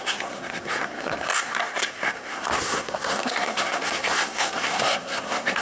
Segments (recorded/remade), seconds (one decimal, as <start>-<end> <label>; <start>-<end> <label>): 0.0-5.6 remade